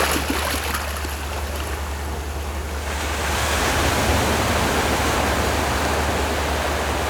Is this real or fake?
real